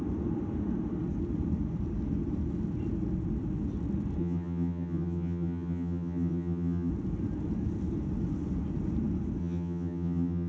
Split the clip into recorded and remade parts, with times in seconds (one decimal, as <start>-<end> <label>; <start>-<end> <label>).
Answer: 0.0-4.2 recorded; 4.2-6.9 remade; 6.9-9.4 recorded; 9.4-10.5 remade